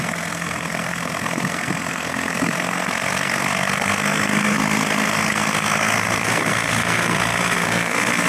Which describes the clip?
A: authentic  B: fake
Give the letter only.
B